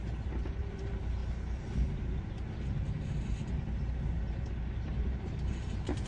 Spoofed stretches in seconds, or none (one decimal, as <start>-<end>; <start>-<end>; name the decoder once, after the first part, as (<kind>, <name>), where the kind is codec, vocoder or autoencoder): 0.0-1.2 (vocoder, BigVGAN v2); 4.8-6.1